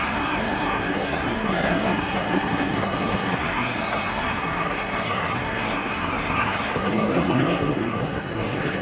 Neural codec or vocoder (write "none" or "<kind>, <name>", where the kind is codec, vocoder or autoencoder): codec, SNAC